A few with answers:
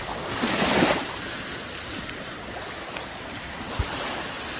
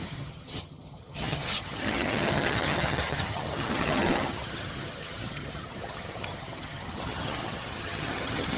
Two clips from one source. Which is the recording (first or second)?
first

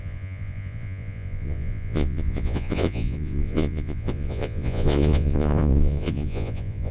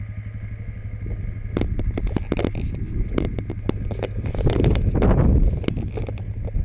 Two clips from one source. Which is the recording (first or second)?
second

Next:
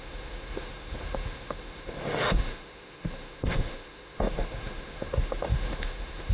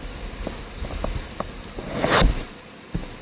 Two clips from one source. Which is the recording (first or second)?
second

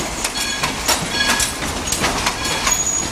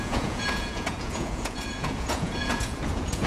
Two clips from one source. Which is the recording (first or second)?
first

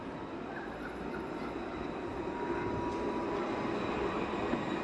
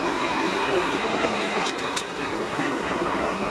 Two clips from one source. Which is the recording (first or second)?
first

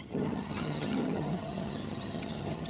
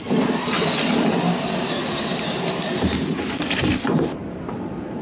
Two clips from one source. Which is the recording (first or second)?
second